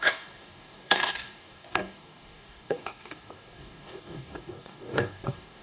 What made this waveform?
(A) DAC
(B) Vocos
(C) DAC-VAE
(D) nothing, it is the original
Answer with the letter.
A